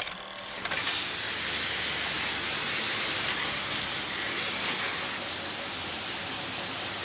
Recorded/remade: recorded